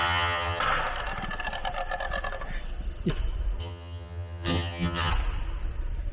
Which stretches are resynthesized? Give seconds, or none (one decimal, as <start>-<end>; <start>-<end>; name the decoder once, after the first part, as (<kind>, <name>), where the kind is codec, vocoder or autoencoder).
0.0-0.6 (vocoder, HiFi-GAN); 3.6-5.1